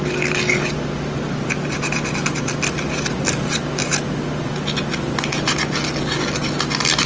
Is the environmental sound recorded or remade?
recorded